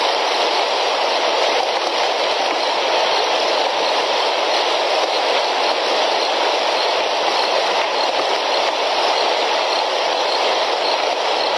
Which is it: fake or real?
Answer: real